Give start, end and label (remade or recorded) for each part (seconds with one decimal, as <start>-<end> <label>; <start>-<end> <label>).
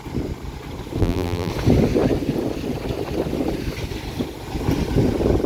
0.0-1.0 recorded; 1.0-1.5 remade; 1.5-5.5 recorded